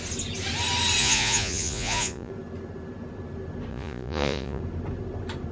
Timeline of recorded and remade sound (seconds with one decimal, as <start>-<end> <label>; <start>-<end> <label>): 0.0-1.0 recorded; 1.0-2.3 remade; 2.3-3.7 recorded; 3.7-4.6 remade; 4.6-5.5 recorded